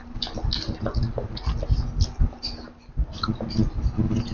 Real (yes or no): yes